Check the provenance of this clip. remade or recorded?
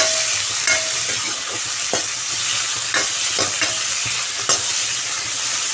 recorded